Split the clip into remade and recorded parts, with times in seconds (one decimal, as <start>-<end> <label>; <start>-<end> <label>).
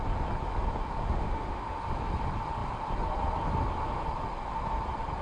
0.0-1.0 recorded; 1.0-1.8 remade; 1.8-5.2 recorded